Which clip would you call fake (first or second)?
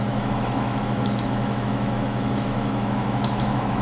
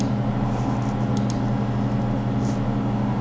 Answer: first